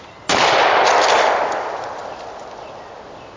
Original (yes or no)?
yes